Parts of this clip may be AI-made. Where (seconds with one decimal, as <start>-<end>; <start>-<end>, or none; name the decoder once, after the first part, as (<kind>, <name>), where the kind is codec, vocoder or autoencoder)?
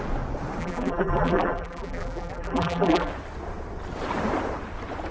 0.6-3.1 (vocoder, BigVGAN v2)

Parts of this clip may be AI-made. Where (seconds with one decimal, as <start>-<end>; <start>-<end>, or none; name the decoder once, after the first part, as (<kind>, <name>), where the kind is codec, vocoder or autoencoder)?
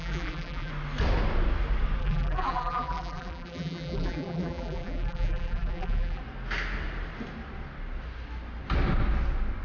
0.0-0.7 (vocoder, BigVGAN v2); 2.0-6.2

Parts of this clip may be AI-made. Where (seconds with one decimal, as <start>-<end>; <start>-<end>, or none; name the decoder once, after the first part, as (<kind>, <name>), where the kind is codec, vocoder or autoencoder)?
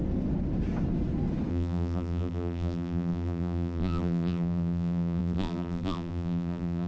1.5-6.9 (vocoder, BigVGAN v2)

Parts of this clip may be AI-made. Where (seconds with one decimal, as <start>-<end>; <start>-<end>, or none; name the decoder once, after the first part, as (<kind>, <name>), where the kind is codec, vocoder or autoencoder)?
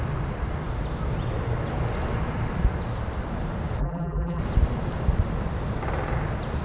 3.8-4.4 (vocoder, BigVGAN v2)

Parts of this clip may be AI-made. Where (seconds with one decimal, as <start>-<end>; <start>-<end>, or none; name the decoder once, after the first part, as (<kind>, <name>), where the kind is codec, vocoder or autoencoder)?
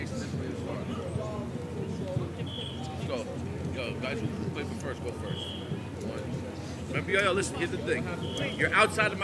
none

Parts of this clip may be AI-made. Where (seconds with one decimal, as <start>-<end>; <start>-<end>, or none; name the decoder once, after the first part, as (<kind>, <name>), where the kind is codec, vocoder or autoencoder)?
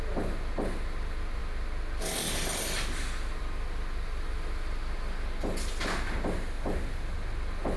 none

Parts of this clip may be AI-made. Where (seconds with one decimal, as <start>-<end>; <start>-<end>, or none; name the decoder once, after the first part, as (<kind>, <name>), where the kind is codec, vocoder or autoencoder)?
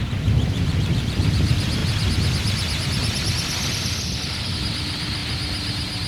0.0-1.8 (vocoder, BigVGAN v2); 4.5-5.2